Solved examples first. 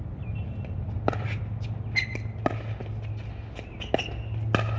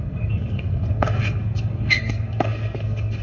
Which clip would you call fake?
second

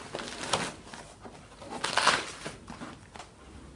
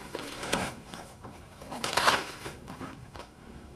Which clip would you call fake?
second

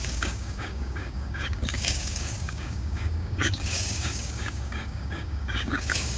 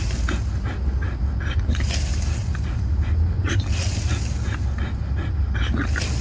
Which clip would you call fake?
first